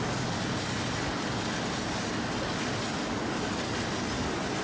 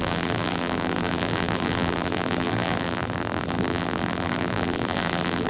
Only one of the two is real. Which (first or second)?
first